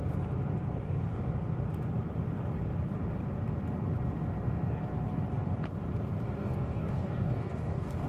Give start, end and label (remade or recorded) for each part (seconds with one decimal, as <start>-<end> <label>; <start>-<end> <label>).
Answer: 0.0-0.8 recorded; 0.8-1.3 remade; 1.3-6.4 recorded; 6.4-8.1 remade